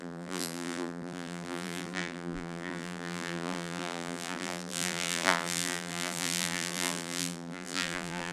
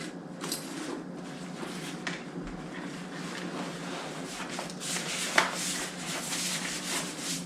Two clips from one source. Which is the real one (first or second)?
second